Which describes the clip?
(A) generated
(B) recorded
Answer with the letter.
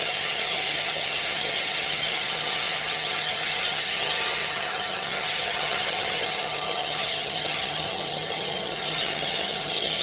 A